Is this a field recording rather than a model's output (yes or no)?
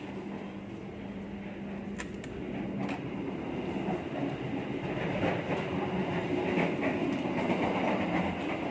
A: yes